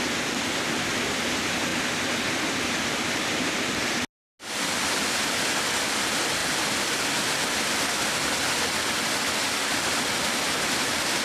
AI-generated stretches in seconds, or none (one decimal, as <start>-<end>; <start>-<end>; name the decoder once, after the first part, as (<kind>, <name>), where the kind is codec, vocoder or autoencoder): none